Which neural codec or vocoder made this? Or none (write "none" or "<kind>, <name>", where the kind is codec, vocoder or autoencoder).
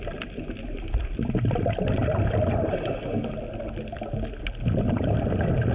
none